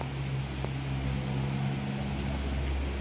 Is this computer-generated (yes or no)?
no